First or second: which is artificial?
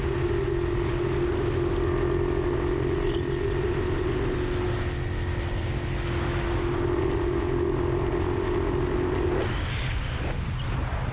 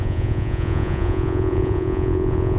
second